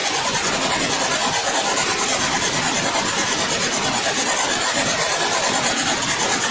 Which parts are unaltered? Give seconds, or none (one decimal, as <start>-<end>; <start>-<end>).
0.5-6.5